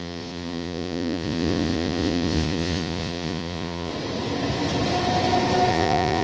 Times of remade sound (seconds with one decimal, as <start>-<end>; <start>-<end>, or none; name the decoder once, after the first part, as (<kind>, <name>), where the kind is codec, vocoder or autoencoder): 0.0-3.9 (vocoder, Vocos); 5.7-6.2